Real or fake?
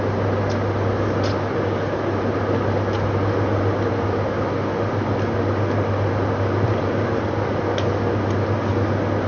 real